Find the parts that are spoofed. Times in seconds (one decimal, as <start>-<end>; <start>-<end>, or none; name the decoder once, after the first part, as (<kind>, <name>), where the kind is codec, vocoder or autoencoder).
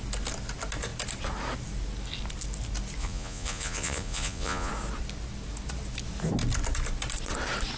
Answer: 3.0-4.7 (vocoder, Vocos)